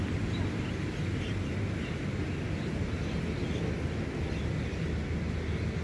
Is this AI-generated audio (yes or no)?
no